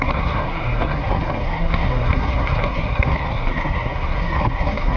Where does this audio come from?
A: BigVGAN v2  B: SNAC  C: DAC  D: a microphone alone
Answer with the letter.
B